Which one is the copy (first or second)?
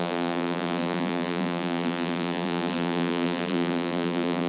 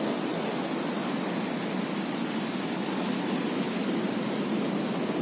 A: first